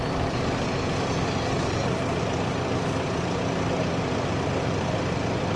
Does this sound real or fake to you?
fake